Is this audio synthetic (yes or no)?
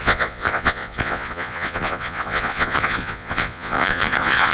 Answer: yes